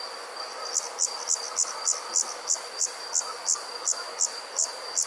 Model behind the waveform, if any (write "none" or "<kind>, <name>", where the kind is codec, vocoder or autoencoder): none